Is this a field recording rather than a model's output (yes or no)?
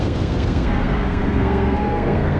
no